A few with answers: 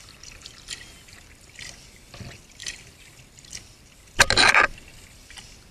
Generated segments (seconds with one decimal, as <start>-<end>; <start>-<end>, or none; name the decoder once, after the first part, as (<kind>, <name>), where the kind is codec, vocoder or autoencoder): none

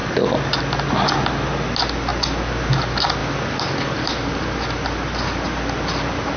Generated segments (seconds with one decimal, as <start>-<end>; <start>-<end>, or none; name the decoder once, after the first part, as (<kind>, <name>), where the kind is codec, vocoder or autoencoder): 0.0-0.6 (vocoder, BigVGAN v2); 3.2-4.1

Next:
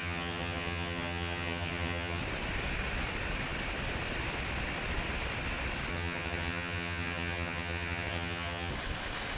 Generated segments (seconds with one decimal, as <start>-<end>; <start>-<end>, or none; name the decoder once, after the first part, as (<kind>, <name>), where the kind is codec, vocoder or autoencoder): 0.0-2.2 (vocoder, HiFi-GAN); 5.9-8.7

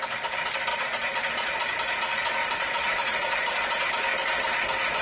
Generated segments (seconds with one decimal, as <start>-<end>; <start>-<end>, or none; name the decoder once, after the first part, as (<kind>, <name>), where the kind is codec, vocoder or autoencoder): 0.7-1.7 (vocoder, Vocos); 2.4-3.9